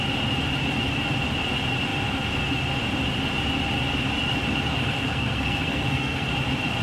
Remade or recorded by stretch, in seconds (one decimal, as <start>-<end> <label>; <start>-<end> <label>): 0.0-4.7 recorded; 4.7-6.3 remade; 6.3-6.8 recorded